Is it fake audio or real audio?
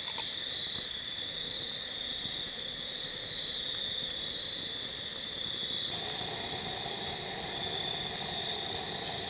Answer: real